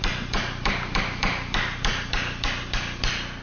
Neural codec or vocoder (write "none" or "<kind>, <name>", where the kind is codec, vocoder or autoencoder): none